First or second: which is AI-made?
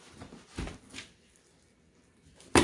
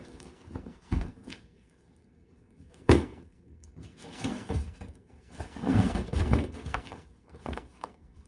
second